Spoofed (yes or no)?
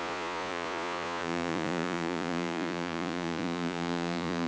yes